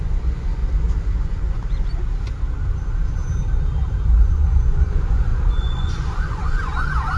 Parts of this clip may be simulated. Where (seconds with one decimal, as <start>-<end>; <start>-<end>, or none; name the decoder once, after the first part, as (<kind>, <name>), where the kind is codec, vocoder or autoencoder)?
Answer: 0.0-0.6 (vocoder, Vocos); 1.2-1.6; 4.1-7.2